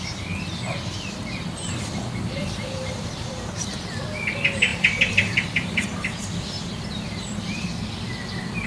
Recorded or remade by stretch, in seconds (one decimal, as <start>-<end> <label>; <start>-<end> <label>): 0.0-2.4 recorded; 2.4-3.3 remade; 3.3-4.7 recorded; 4.7-7.5 remade; 7.5-8.7 recorded